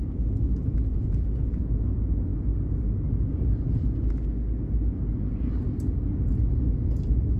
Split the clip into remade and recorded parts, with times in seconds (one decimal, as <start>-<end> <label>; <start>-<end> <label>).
0.0-0.9 recorded; 0.9-1.5 remade; 1.5-7.4 recorded